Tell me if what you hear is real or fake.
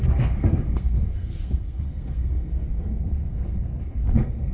fake